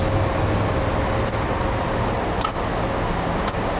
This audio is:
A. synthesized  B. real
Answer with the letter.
B